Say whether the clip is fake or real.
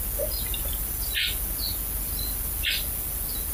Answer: real